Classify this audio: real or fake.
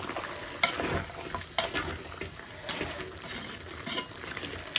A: real